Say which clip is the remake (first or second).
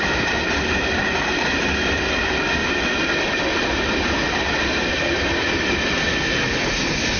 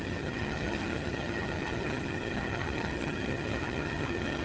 second